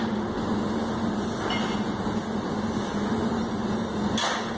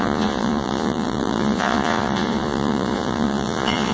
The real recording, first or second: first